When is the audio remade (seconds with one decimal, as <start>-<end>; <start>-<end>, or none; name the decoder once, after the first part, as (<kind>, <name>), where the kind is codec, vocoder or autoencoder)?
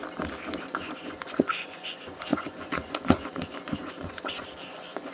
0.6-5.1 (vocoder, Vocos)